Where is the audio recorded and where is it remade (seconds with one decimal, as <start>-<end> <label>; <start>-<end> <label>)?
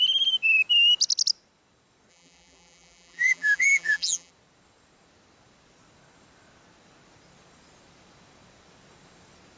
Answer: 0.0-2.1 recorded; 2.1-4.3 remade; 4.3-9.6 recorded